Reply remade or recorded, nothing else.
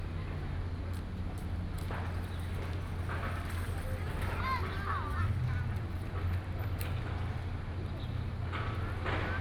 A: recorded